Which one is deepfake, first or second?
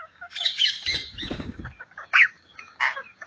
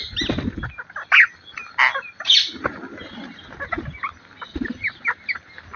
first